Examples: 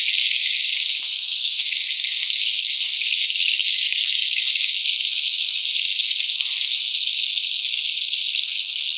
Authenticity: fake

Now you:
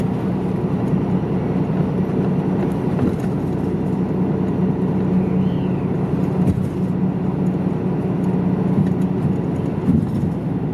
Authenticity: real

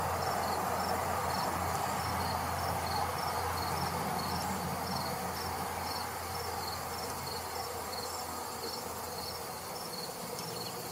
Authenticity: real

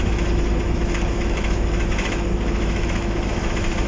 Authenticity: fake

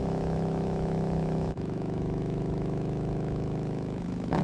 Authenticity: fake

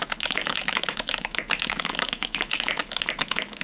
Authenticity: fake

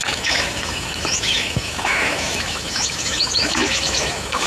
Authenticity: fake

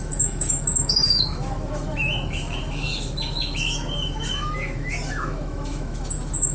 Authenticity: fake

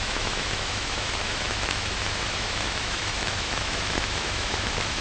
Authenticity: fake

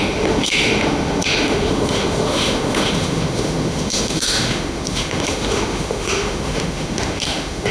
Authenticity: fake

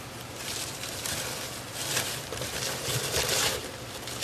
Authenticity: real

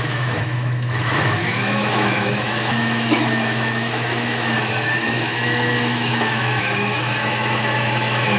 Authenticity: fake